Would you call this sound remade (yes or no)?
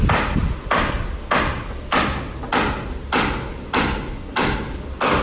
no